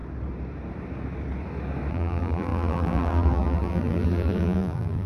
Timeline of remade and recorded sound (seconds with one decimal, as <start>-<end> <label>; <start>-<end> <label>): 0.0-1.9 recorded; 1.9-5.1 remade